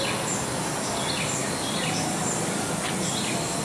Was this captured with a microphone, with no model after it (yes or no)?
yes